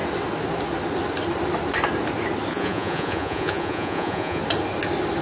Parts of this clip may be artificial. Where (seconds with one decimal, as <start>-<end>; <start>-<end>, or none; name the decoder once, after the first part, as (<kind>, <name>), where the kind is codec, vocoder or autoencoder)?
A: 2.5-4.4 (vocoder, Vocos)